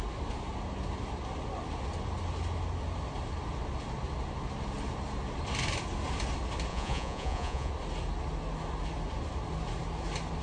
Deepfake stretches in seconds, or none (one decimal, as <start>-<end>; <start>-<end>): 6.7-7.7